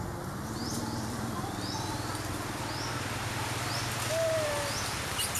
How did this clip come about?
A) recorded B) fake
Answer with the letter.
A